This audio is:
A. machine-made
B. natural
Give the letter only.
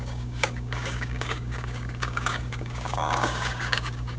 A